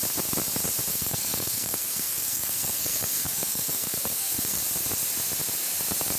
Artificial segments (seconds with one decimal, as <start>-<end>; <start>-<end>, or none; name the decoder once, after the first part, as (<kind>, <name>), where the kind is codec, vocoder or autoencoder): 0.9-4.6 (codec, SNAC)